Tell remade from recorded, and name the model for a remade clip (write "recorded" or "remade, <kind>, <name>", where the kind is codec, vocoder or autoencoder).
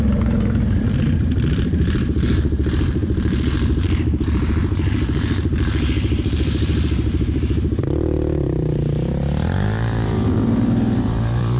remade, vocoder, BigVGAN v2